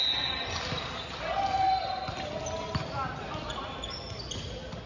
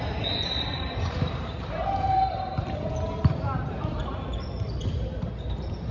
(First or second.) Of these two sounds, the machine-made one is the second